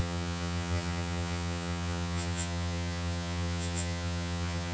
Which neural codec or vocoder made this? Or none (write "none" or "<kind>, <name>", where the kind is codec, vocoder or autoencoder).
vocoder, HiFi-GAN